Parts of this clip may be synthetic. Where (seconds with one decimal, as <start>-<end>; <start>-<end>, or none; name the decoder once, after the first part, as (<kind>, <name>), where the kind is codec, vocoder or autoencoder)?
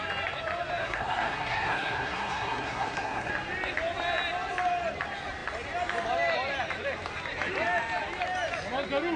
0.8-3.3 (codec, SNAC)